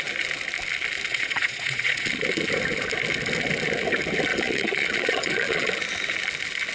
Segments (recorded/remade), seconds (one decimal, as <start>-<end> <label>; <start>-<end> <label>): 0.0-1.1 recorded; 1.1-2.1 remade; 2.1-4.3 recorded; 4.3-5.7 remade; 5.7-6.7 recorded